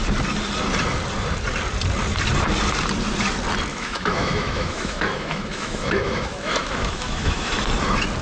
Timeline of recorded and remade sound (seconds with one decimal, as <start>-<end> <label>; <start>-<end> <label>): 0.0-3.7 recorded; 3.7-7.5 remade; 7.5-8.2 recorded